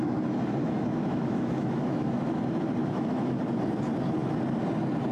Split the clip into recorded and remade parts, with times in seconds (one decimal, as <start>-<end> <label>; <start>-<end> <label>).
0.0-0.6 recorded; 0.6-2.4 remade; 2.4-2.8 recorded; 2.8-3.6 remade; 3.6-5.1 recorded

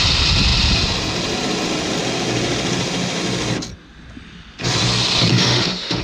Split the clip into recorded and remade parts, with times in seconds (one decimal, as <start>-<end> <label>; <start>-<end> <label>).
0.0-5.3 recorded; 5.3-6.0 remade